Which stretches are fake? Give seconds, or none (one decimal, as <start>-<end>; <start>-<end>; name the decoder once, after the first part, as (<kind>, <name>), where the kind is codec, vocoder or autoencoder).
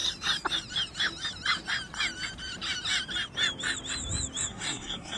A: 4.5-5.2 (codec, SNAC)